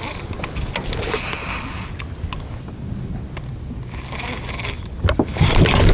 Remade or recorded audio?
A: recorded